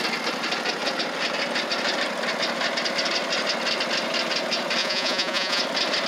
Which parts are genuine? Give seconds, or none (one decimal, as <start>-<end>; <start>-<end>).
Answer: 0.0-4.8; 5.6-6.1